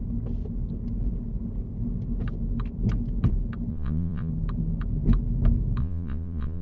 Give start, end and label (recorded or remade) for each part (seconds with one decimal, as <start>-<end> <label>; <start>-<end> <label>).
0.0-3.7 recorded; 3.7-4.3 remade; 4.3-5.8 recorded; 5.8-6.6 remade